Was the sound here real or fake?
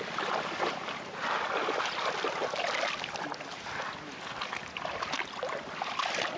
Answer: real